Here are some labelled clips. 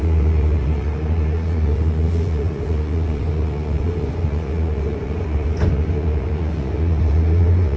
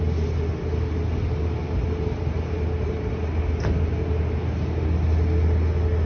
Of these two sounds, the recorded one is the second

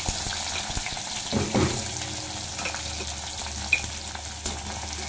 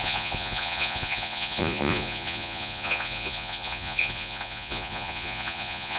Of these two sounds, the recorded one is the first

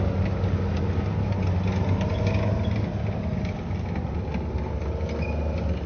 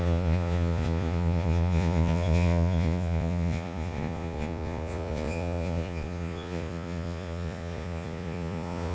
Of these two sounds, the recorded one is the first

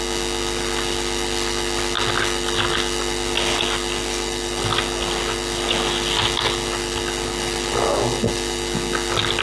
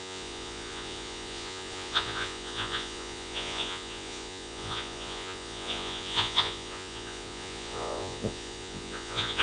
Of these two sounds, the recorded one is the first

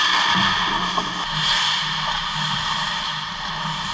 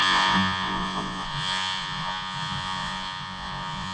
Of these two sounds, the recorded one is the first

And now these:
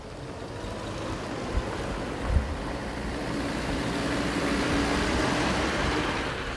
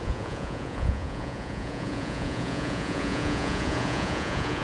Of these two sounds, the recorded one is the first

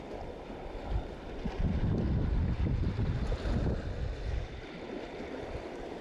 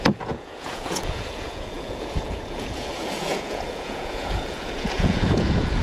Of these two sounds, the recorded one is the first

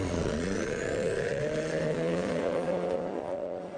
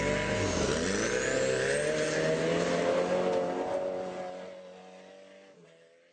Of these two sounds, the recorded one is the second